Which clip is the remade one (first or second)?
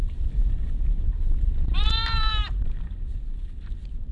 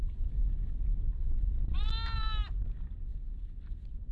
first